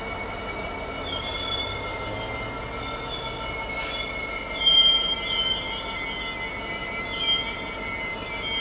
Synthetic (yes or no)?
no